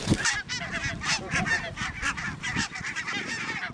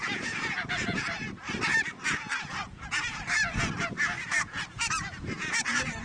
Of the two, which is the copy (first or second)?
second